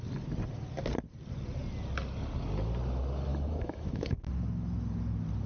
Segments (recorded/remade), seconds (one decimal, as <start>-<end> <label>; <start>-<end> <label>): 0.0-3.3 recorded; 3.3-4.3 remade; 4.3-5.5 recorded